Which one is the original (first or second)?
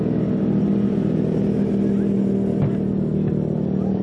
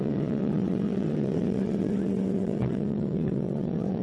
first